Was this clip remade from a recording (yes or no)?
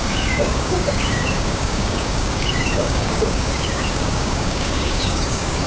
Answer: yes